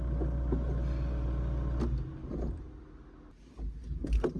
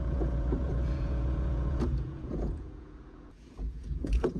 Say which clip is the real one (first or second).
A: first